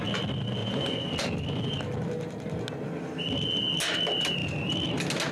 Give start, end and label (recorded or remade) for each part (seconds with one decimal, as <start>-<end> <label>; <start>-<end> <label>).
0.0-0.6 recorded; 0.6-1.1 remade; 1.1-5.3 recorded